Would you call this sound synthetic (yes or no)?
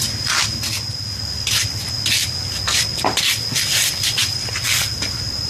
no